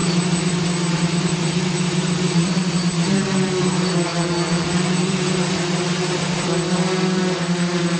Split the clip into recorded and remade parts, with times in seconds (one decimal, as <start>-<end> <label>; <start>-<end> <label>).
0.0-4.1 remade; 4.1-5.5 recorded; 5.5-8.0 remade